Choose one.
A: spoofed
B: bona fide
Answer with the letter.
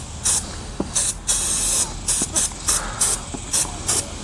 B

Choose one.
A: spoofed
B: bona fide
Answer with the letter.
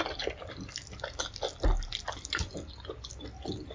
B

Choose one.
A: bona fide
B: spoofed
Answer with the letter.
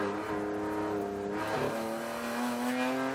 A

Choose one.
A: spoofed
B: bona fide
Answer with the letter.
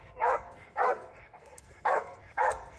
A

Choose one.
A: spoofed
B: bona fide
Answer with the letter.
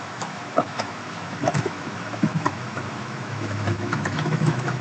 A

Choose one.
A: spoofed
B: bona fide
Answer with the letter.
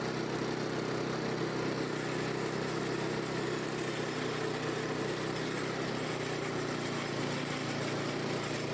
B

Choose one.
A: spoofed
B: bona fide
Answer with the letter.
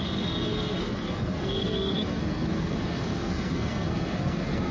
A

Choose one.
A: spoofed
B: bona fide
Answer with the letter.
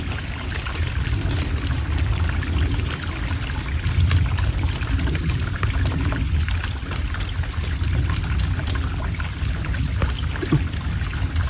B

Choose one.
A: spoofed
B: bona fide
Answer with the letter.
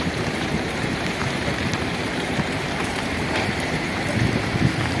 A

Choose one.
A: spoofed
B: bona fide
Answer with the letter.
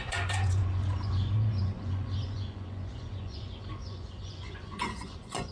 A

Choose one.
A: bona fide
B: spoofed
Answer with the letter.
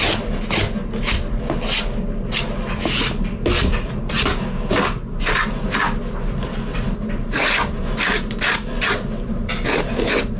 A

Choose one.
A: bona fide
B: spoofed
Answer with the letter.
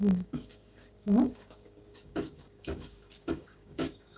B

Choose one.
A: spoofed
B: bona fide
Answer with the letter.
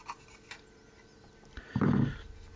B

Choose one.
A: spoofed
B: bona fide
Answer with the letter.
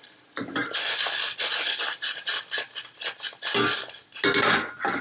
B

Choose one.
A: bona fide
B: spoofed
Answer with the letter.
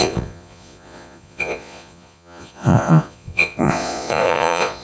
B